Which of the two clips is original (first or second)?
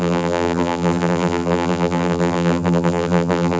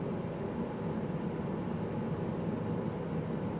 second